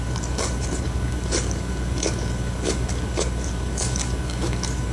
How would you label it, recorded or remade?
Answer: remade